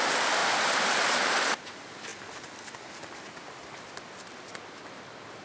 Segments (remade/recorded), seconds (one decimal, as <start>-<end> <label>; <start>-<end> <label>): 0.0-0.4 recorded; 0.4-1.6 remade; 1.6-5.4 recorded